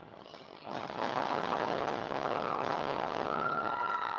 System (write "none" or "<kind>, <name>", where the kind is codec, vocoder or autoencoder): vocoder, HiFi-GAN